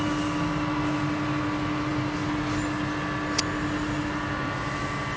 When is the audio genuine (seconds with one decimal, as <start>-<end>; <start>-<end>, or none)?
0.0-5.2